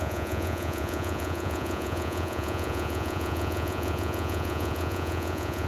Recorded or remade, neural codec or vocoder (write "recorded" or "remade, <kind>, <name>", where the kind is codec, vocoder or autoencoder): remade, vocoder, Vocos